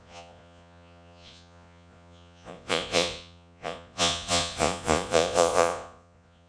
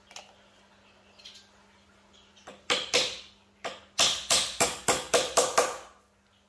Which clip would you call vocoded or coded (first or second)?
first